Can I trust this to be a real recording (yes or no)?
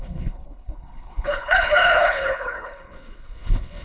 no